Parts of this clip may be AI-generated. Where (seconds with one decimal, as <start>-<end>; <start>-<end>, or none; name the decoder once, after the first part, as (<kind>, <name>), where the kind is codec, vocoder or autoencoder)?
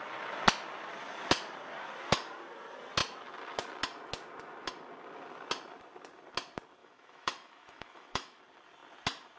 6.8-8.4 (autoencoder, DAC-VAE)